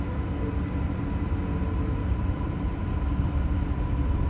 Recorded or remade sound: recorded